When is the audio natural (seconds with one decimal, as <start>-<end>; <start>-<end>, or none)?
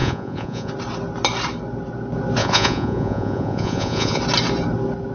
0.7-2.4; 4.2-5.1